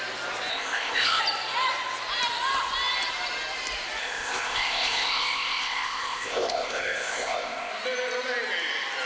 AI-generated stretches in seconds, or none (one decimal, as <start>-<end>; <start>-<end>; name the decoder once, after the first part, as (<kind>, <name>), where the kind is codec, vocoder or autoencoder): 0.5-1.2 (codec, ZipCodec); 4.0-7.7